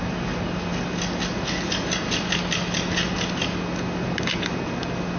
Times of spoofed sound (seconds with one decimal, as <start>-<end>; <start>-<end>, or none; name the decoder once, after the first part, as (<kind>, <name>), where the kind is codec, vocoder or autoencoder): none